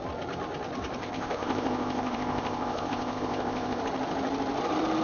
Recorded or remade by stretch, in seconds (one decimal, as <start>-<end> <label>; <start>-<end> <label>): 0.0-1.0 recorded; 1.0-3.8 remade; 3.8-5.0 recorded